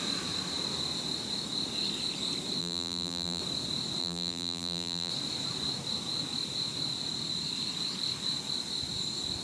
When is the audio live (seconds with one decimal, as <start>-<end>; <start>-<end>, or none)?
0.0-2.6; 3.4-4.0; 5.1-9.4